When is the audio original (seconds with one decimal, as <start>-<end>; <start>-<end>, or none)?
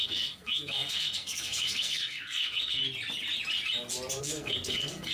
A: 2.8-4.2